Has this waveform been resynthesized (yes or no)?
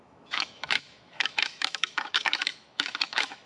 yes